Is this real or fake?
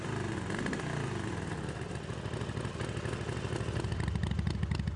real